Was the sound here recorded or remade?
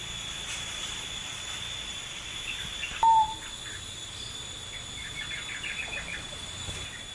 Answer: recorded